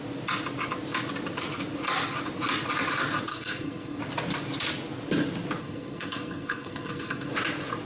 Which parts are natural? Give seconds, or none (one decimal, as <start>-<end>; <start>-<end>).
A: 0.0-3.3; 4.0-5.6; 7.3-7.9